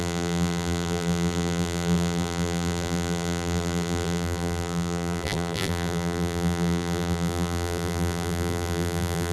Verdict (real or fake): fake